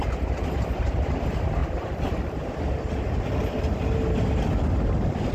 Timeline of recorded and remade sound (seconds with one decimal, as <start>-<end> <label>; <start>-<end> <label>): 0.0-1.6 recorded; 1.6-2.5 remade; 2.5-5.3 recorded